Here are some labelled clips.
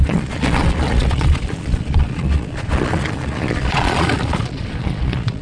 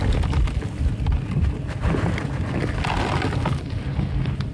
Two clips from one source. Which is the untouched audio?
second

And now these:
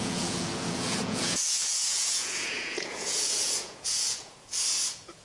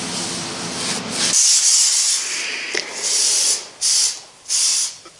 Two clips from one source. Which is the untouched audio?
second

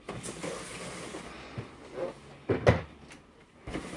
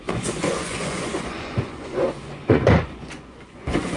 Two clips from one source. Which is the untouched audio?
first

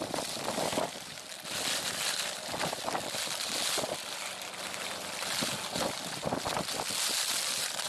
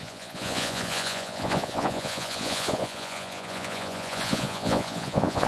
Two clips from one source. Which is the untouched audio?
first